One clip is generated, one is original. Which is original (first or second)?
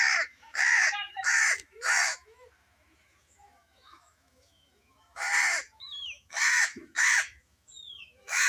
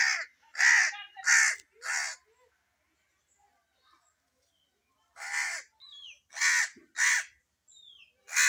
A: second